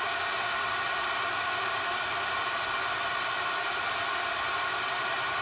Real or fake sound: real